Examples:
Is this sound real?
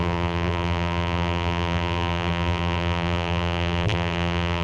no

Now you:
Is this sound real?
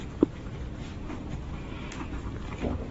yes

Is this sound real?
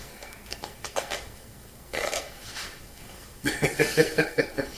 no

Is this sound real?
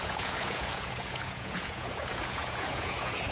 no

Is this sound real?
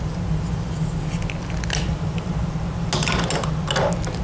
yes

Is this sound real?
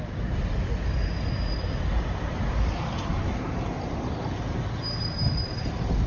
yes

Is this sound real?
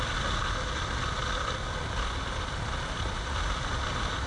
yes